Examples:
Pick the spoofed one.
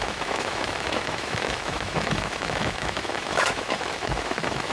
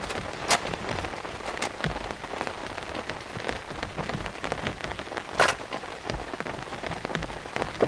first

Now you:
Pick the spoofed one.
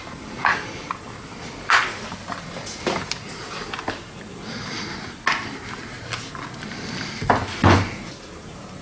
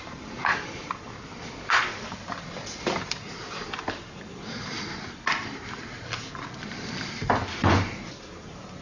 second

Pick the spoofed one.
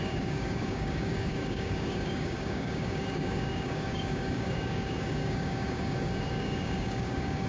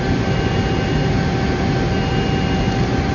first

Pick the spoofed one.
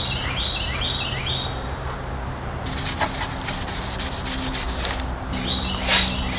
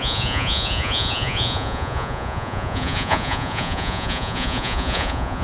second